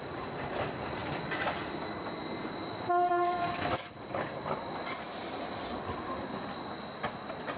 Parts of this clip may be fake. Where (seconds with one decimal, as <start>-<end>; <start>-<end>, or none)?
1.0-2.0

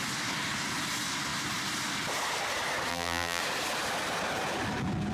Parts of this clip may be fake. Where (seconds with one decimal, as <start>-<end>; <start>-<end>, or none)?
2.9-3.4

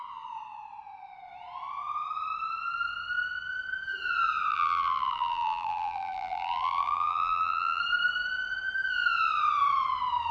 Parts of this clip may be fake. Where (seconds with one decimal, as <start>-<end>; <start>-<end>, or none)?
4.5-7.8

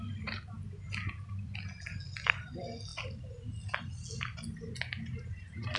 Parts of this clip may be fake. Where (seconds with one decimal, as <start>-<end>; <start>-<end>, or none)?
none

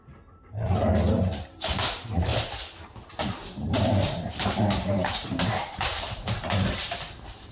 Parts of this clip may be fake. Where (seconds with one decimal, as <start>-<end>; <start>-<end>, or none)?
0.0-2.3; 3.7-7.5